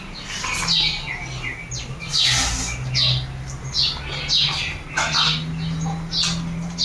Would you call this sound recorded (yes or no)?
yes